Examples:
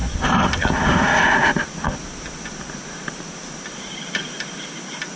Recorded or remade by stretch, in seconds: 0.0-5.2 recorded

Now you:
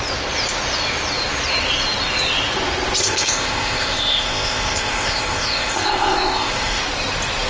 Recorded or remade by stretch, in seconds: 0.0-3.0 recorded; 3.0-6.8 remade; 6.8-7.5 recorded